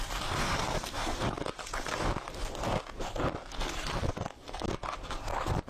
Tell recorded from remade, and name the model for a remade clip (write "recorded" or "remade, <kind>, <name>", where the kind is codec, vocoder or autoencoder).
recorded